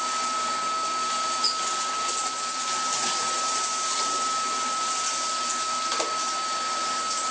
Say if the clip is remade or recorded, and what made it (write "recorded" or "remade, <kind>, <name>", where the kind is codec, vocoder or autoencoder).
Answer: recorded